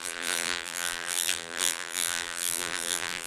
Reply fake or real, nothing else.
fake